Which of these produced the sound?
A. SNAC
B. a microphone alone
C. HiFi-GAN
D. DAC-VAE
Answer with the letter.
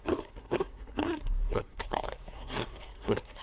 A